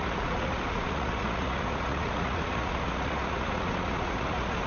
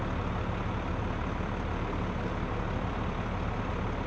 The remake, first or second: first